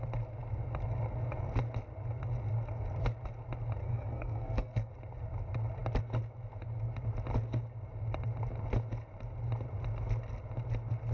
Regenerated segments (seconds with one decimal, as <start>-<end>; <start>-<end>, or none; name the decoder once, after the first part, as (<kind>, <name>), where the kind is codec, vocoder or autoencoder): 3.8-4.9 (codec, SNAC)